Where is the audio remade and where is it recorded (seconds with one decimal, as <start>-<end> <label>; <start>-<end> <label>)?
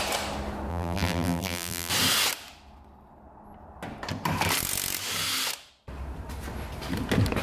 0.0-0.7 recorded; 0.7-1.9 remade; 1.9-7.4 recorded